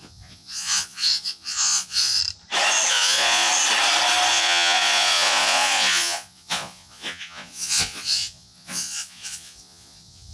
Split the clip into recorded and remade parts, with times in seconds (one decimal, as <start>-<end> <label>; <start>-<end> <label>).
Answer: 0.0-2.2 remade; 2.2-2.9 recorded; 2.9-3.5 remade; 3.5-4.3 recorded; 4.3-10.3 remade